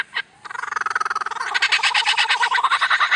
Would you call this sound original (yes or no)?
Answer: yes